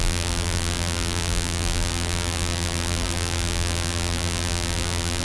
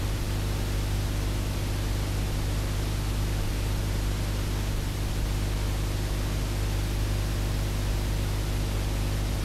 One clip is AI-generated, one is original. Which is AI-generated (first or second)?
first